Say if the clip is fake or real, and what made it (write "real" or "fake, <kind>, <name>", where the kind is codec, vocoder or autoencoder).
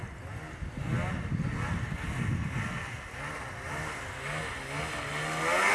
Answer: real